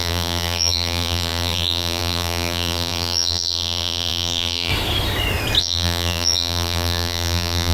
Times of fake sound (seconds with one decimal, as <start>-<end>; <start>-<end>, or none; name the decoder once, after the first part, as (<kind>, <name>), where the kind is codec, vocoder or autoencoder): 0.0-4.7 (vocoder, BigVGAN v2); 5.6-7.7